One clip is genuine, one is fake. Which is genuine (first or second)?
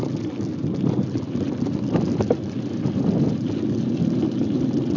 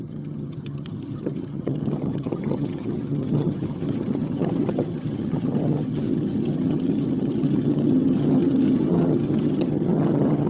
first